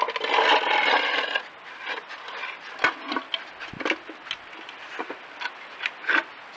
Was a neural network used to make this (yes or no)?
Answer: no